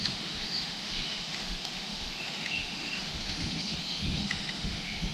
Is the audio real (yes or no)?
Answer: no